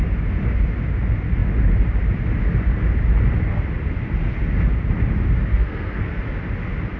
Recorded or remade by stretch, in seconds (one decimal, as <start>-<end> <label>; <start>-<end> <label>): 0.0-5.5 recorded; 5.5-6.2 remade; 6.2-7.0 recorded